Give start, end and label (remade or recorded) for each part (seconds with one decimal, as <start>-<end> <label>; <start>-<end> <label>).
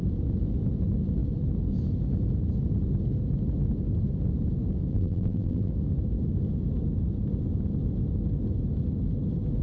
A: 0.0-4.9 recorded; 4.9-5.7 remade; 5.7-9.6 recorded